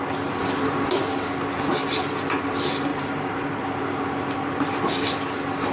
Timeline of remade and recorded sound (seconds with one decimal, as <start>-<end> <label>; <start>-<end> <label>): 0.0-0.4 recorded; 0.4-0.9 remade; 0.9-2.9 recorded; 2.9-3.8 remade; 3.8-5.7 recorded